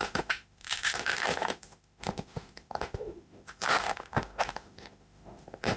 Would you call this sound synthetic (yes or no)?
yes